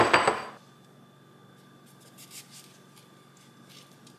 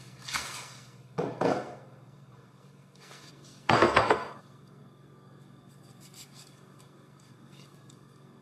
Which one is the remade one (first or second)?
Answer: second